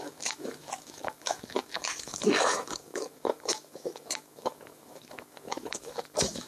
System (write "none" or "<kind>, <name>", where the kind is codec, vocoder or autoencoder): autoencoder, DAC-VAE